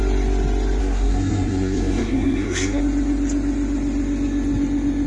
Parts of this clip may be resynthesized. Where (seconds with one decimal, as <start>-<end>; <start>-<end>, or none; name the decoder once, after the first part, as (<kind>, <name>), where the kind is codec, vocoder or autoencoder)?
0.8-2.8 (codec, SNAC)